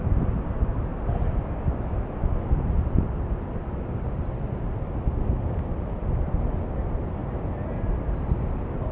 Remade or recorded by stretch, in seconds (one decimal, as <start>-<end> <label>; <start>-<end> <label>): 0.0-0.9 remade; 0.9-5.7 recorded; 5.7-7.2 remade; 7.2-7.9 recorded; 7.9-8.9 remade